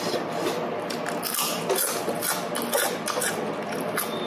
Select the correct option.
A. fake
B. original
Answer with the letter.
B